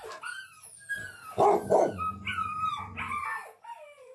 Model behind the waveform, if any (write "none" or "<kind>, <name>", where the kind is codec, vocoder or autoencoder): none